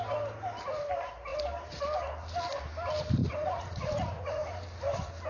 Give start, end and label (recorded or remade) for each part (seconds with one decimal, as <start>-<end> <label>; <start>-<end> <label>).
0.0-3.2 recorded; 3.2-4.5 remade; 4.5-5.3 recorded